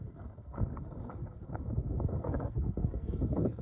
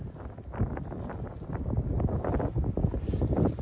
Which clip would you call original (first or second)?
second